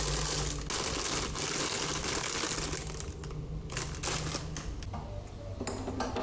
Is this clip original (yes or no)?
yes